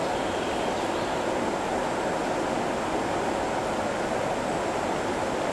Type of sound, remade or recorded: recorded